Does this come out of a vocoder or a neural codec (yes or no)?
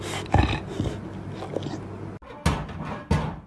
no